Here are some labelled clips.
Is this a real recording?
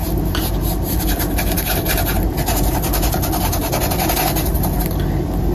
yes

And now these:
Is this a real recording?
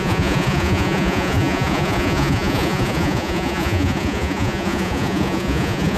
no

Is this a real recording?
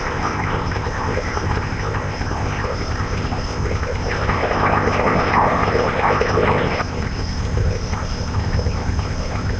no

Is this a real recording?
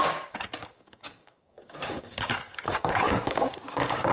no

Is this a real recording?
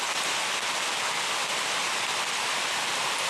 yes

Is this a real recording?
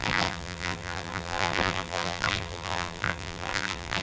no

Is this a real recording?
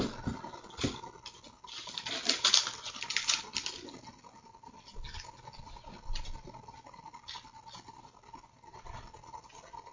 yes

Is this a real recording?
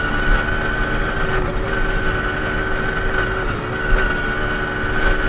yes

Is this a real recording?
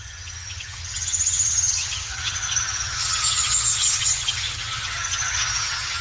no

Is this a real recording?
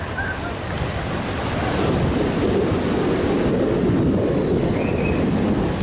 yes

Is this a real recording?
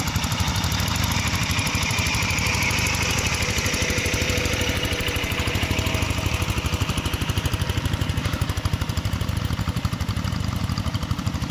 yes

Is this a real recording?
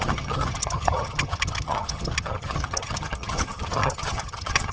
no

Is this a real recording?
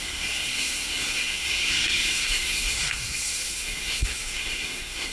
no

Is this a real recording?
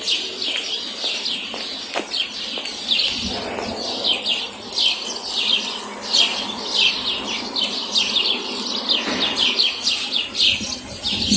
yes